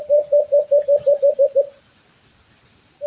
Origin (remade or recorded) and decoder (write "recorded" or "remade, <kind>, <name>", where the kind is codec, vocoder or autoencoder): recorded